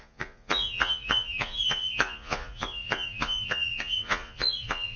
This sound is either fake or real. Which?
fake